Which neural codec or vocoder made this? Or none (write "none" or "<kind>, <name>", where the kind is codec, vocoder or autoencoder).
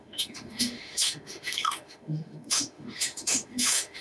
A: autoencoder, DAC-VAE